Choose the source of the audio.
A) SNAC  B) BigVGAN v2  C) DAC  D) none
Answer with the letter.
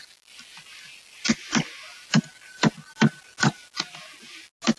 D